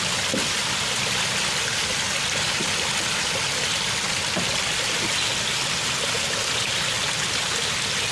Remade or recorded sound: recorded